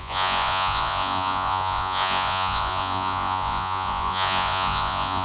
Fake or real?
fake